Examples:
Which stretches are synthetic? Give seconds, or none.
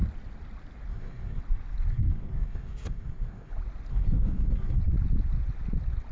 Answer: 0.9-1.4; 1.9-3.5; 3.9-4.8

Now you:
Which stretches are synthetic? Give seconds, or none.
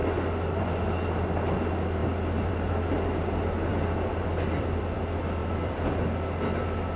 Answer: 3.7-5.0; 5.4-6.0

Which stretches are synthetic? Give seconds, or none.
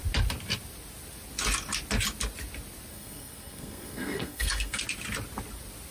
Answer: 2.9-4.8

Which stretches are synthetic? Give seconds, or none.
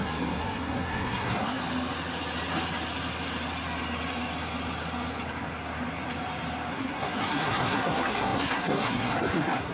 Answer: 0.0-1.6; 6.7-9.7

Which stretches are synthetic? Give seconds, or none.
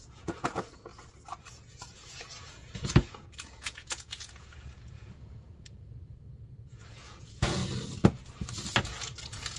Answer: 0.0-0.9; 1.5-7.6; 8.8-9.6